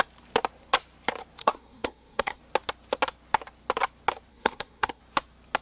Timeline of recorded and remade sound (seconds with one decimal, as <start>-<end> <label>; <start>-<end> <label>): 0.0-1.4 recorded; 1.4-2.4 remade; 2.4-4.3 recorded; 4.3-5.0 remade; 5.0-5.6 recorded